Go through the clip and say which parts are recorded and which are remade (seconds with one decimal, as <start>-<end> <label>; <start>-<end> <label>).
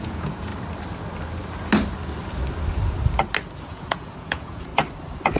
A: 0.0-0.5 remade; 0.5-3.7 recorded; 3.7-4.7 remade; 4.7-5.4 recorded